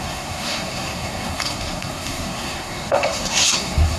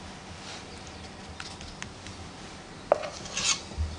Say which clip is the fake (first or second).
first